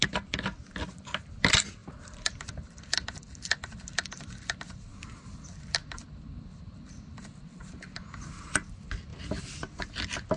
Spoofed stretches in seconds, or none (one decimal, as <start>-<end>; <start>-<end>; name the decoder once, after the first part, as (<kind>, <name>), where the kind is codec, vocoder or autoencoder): 1.8-5.0 (vocoder, BigVGAN v2); 9.1-9.8